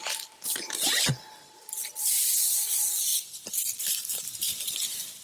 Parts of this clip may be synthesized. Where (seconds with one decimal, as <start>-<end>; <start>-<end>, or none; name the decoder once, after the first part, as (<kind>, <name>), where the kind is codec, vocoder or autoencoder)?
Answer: 0.0-1.1 (vocoder, BigVGAN v2); 1.7-3.1; 3.8-5.2

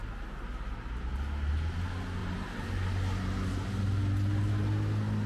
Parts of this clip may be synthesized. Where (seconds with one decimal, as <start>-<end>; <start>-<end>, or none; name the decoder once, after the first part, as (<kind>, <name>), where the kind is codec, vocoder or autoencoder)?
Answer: 2.2-2.7 (vocoder, BigVGAN v2)

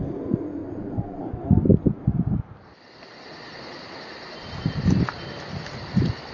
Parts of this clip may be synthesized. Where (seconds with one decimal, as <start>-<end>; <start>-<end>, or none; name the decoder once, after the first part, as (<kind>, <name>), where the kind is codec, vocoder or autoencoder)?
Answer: 0.6-1.2 (vocoder, BigVGAN v2); 1.7-4.9

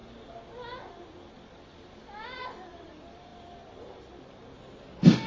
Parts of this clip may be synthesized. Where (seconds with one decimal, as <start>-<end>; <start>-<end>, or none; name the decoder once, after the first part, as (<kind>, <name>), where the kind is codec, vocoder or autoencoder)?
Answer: none

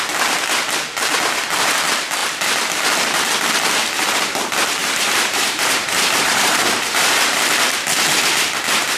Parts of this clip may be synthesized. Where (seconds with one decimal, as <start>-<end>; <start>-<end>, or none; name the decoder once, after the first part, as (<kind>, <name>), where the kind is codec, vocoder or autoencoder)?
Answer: 4.8-7.4 (vocoder, BigVGAN v2)

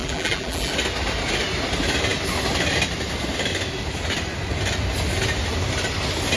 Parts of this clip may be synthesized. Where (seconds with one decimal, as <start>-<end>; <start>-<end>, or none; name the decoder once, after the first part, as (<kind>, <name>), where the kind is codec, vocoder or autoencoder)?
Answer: 0.0-0.7 (vocoder, BigVGAN v2)

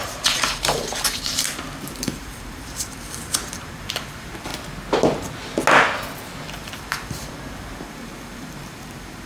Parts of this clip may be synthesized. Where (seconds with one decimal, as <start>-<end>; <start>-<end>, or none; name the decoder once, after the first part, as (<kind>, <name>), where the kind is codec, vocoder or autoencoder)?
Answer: 0.0-4.5 (vocoder, BigVGAN v2); 6.5-9.3

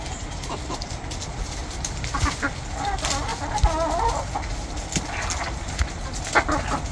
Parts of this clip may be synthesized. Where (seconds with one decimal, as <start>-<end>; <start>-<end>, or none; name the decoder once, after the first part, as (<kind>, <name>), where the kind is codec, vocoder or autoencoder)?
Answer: 1.6-2.7 (vocoder, BigVGAN v2)